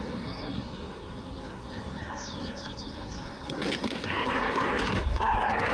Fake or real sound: fake